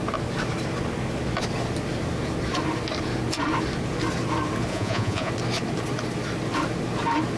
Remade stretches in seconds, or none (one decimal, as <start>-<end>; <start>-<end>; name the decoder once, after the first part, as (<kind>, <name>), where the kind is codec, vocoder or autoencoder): 4.7-5.3 (vocoder, Vocos)